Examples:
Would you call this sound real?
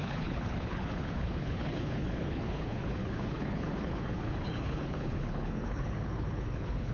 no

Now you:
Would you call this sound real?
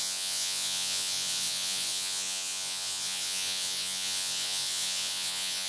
no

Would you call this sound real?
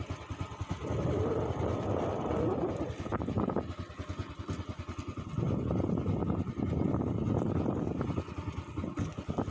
yes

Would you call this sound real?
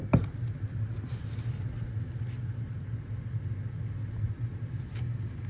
yes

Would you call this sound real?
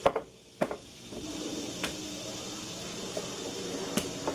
yes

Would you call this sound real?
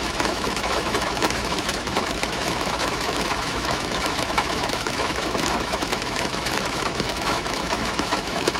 no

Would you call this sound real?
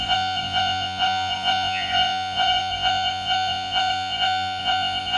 no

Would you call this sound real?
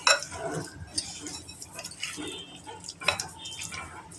yes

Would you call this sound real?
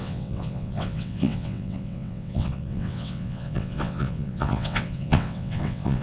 no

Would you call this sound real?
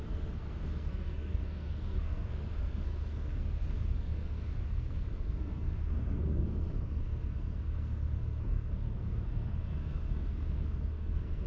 no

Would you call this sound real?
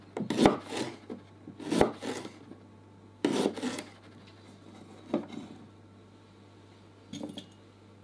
yes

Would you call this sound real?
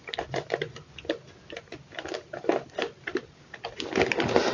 yes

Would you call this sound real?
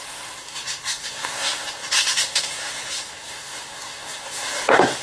no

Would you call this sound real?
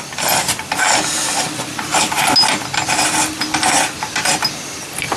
yes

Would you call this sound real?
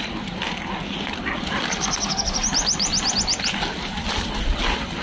yes